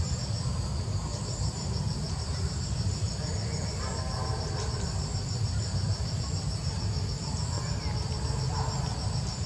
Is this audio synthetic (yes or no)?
no